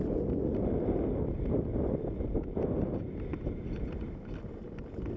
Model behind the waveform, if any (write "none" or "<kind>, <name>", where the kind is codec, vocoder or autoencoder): none